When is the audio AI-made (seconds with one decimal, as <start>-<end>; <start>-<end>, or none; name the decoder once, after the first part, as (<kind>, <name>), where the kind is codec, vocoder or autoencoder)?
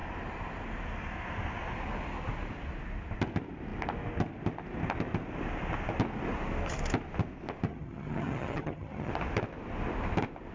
7.7-9.1 (vocoder, HiFi-GAN)